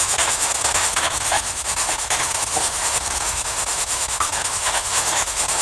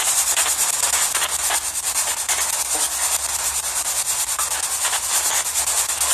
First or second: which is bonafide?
second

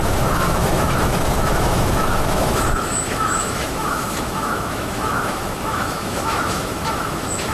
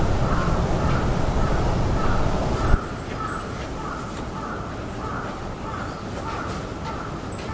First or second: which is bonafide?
second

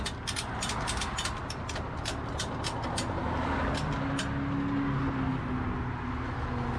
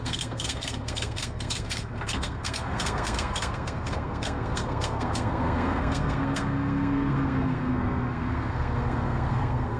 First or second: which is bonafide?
first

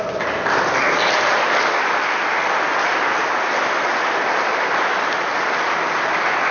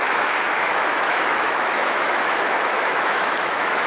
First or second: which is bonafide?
first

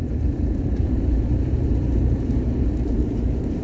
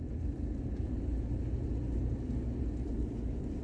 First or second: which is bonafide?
second